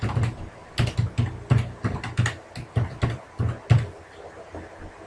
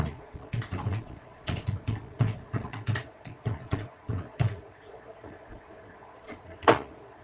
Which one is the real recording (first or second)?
first